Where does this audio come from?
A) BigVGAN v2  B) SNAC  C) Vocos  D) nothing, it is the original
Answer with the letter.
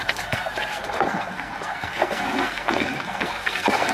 B